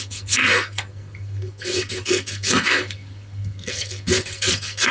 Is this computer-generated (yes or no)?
yes